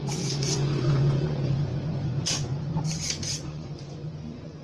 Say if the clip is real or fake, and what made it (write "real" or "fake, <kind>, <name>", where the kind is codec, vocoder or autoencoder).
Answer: fake, vocoder, Vocos